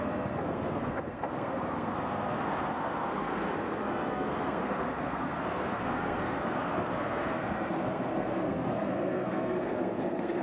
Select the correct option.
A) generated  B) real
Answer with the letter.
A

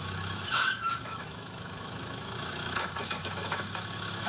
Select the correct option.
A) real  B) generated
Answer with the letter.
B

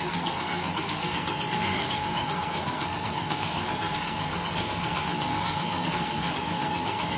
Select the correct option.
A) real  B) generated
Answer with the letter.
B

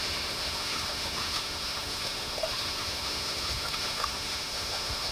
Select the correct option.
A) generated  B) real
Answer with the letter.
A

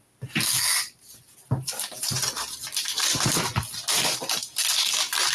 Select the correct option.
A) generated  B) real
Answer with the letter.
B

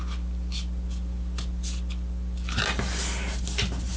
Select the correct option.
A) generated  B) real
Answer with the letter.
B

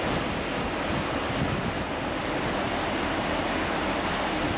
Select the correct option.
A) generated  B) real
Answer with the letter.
B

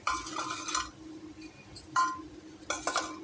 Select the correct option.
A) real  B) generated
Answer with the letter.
A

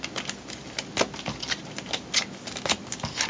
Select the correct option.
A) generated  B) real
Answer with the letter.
B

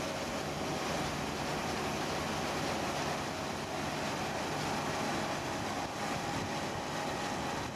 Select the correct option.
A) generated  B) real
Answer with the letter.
B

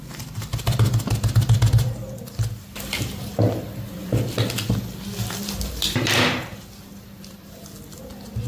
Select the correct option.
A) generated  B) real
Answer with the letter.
B